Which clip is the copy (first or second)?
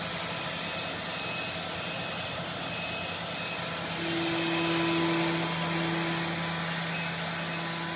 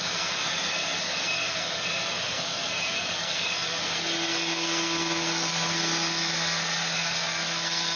second